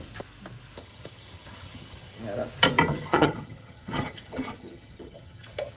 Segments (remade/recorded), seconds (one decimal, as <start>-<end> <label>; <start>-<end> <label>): 0.0-0.8 recorded; 0.8-2.2 remade; 2.2-2.9 recorded; 2.9-5.8 remade